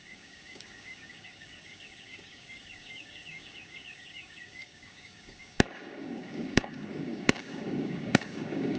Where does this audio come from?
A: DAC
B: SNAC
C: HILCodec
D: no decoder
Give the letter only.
A